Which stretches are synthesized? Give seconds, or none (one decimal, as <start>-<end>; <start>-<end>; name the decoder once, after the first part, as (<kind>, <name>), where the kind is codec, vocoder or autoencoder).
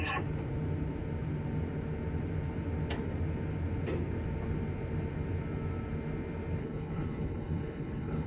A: 6.6-8.3 (codec, HILCodec)